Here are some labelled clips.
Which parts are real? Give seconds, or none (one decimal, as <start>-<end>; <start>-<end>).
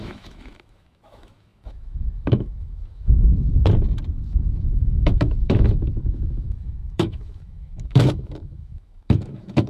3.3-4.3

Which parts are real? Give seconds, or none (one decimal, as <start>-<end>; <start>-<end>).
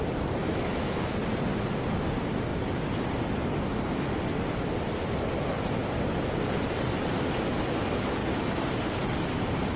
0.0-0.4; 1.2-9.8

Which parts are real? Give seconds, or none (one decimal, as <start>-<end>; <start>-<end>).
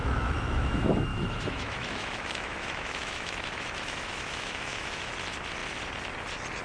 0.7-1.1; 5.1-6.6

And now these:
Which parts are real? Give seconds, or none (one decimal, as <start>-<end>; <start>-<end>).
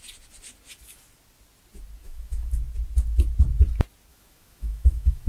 0.0-2.0; 2.5-4.1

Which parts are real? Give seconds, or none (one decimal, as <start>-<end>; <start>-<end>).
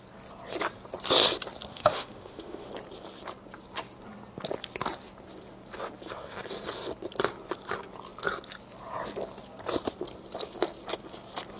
0.0-1.7; 2.7-11.6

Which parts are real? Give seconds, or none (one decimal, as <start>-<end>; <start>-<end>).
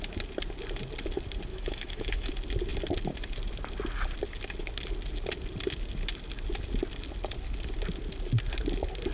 0.0-1.5; 2.3-9.1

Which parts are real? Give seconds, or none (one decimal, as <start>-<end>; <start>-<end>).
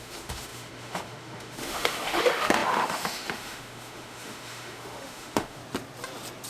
5.6-6.5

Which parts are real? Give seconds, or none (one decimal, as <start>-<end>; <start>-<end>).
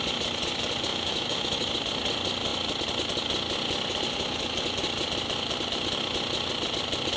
0.0-0.9; 1.7-7.2